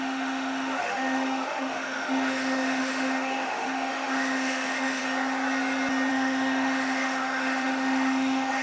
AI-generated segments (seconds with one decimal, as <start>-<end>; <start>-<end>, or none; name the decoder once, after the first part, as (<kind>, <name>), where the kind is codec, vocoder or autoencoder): 0.0-5.0 (autoencoder, DAC-VAE); 6.1-8.6